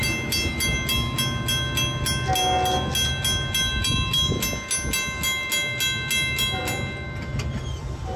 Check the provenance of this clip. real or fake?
real